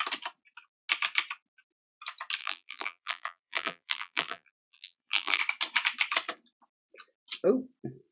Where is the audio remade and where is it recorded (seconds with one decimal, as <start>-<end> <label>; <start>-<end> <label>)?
0.0-2.4 recorded; 2.4-5.4 remade; 5.4-8.1 recorded